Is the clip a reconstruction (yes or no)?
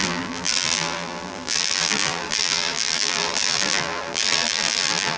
yes